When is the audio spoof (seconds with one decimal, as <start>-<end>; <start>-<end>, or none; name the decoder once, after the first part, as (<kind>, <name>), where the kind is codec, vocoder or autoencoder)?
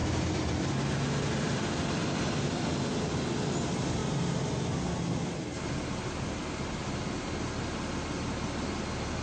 none